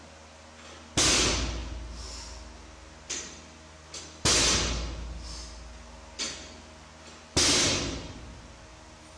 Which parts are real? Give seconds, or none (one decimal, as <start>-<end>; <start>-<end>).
0.0-9.2